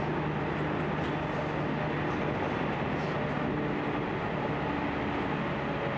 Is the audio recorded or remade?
recorded